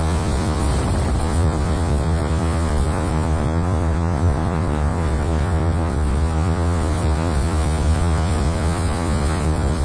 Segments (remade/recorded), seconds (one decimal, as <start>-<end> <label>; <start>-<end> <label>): 0.0-0.7 remade; 0.7-1.2 recorded; 1.2-9.8 remade